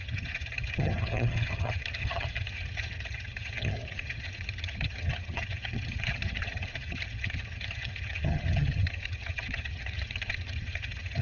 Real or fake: fake